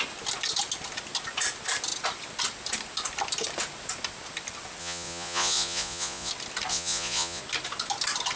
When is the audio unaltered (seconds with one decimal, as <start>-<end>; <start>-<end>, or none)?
0.0-4.8; 6.3-6.7; 7.4-8.4